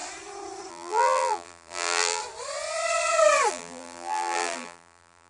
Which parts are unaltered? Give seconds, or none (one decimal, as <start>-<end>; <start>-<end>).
0.0-0.7; 2.2-3.5